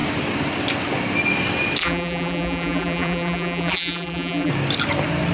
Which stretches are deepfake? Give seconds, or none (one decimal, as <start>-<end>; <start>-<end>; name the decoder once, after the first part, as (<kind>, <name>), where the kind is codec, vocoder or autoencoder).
1.8-4.5 (vocoder, BigVGAN v2)